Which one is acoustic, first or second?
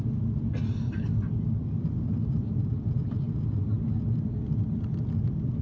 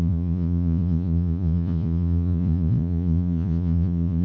first